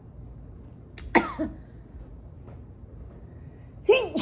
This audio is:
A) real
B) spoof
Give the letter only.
A